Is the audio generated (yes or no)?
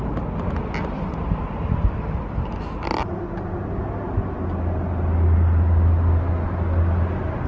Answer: no